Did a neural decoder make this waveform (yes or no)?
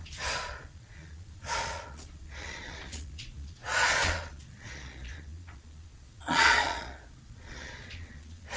yes